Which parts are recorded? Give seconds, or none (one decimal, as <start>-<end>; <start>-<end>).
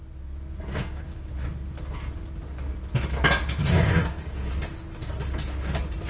0.0-0.8; 1.3-3.6; 4.5-6.1